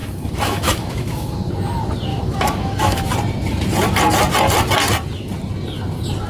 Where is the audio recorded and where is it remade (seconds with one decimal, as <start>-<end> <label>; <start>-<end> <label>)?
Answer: 0.0-1.5 remade; 1.5-2.1 recorded; 2.1-3.0 remade; 3.0-6.3 recorded